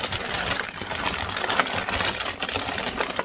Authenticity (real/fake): fake